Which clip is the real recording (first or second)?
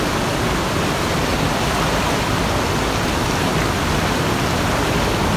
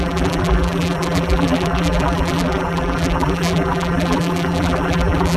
first